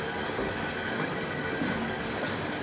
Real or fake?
fake